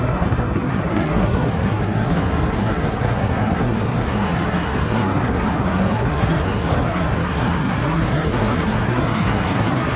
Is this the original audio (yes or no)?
no